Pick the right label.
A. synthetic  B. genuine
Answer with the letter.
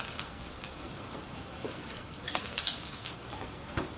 A